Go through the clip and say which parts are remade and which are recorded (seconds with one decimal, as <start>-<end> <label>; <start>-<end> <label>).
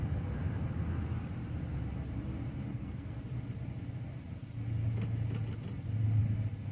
0.0-2.7 recorded; 2.7-3.2 remade; 3.2-6.7 recorded